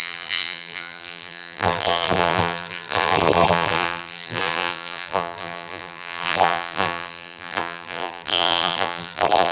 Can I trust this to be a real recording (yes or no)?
no